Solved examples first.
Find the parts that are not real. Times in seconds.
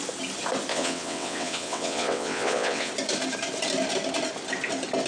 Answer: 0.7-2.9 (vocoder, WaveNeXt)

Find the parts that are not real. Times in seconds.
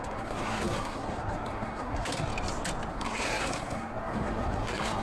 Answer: 0.0-2.3 (codec, SNAC); 2.9-5.0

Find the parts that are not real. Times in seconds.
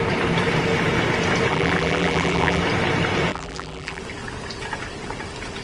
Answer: 1.5-2.6 (vocoder, BigVGAN v2); 3.3-4.0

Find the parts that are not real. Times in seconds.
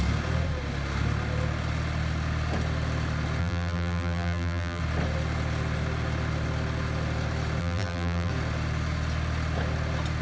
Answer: 3.4-4.8 (vocoder, BigVGAN v2); 7.6-8.3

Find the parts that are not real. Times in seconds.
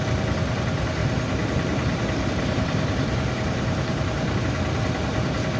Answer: 1.0-4.4 (vocoder, BigVGAN v2)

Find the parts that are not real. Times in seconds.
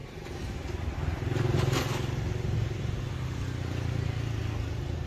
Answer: none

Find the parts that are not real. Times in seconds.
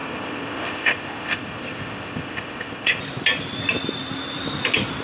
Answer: 0.0-3.0 (codec, ZipCodec)